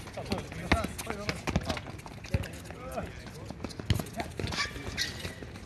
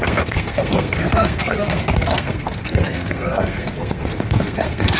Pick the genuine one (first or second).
first